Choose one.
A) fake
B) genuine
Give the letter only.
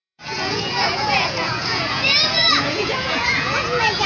A